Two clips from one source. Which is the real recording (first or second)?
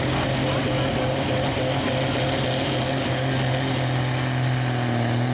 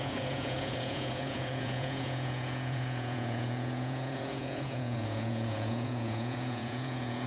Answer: first